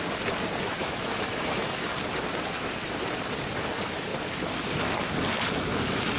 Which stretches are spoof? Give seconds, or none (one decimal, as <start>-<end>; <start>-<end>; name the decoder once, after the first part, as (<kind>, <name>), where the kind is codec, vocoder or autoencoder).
0.8-1.9 (autoencoder, DAC-VAE)